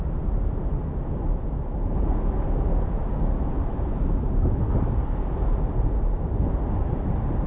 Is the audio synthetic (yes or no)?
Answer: no